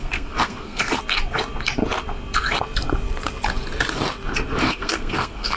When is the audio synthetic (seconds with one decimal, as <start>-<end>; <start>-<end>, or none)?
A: 0.0-1.0; 4.6-5.6